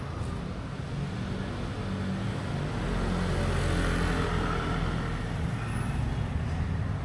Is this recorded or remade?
recorded